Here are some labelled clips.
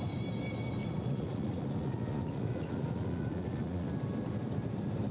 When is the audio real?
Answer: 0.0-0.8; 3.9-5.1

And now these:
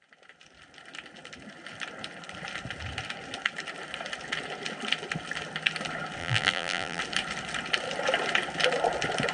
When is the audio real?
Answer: 0.0-6.2; 7.0-9.3

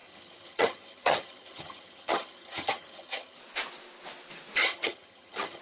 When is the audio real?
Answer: 3.4-4.6

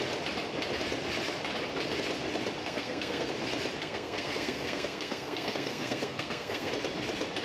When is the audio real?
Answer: 0.0-2.6; 3.3-3.8; 6.7-7.4

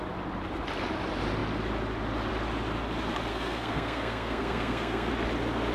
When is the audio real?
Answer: 0.0-3.3; 5.1-5.7

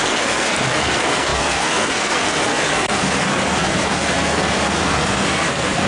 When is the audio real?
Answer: none

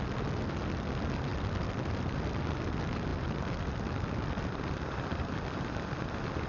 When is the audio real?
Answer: 0.0-6.5